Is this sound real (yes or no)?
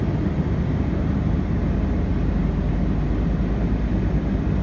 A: yes